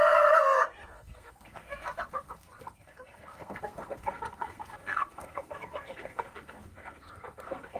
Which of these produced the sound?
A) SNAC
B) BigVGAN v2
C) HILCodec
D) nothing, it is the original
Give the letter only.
A